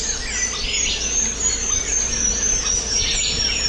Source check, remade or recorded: remade